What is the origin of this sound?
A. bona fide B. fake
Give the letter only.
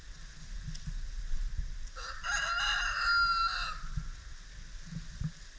A